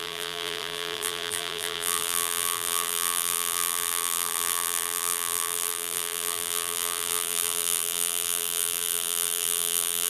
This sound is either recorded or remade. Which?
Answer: remade